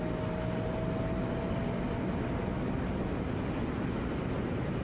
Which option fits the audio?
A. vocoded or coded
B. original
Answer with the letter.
B